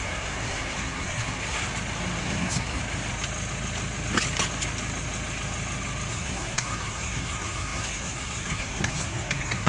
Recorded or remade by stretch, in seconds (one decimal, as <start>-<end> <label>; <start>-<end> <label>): 0.0-1.6 remade; 1.6-2.2 recorded; 2.2-2.8 remade; 2.8-6.1 recorded; 6.1-9.7 remade